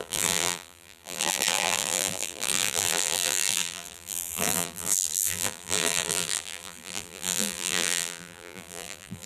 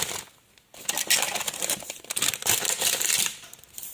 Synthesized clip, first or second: first